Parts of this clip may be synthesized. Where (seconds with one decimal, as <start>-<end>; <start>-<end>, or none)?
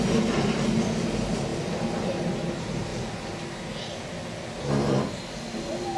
none